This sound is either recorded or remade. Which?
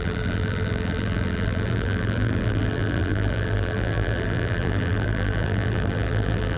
remade